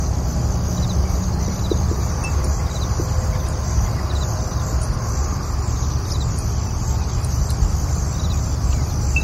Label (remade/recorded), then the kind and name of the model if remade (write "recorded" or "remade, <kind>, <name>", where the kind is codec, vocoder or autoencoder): recorded